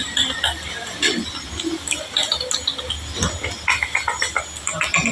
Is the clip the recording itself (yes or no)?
yes